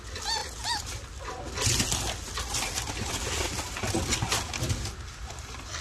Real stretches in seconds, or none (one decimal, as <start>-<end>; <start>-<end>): 0.0-5.8

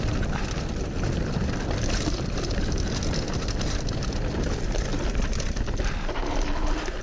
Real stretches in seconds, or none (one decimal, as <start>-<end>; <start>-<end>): 0.0-4.9; 5.5-7.0

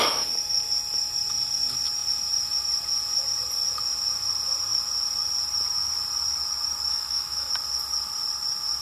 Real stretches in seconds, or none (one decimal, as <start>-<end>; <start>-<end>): 0.0-6.9; 7.5-8.8

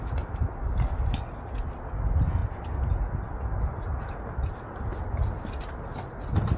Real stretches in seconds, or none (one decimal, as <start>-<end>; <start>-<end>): 0.0-6.6